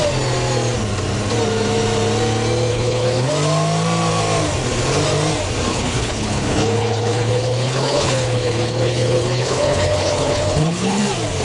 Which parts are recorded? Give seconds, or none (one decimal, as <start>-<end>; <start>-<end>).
0.0-2.7; 3.3-5.7; 11.0-11.4